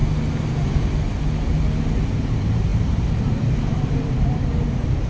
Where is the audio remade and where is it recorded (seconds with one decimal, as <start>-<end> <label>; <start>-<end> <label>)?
0.0-2.1 recorded; 2.1-5.1 remade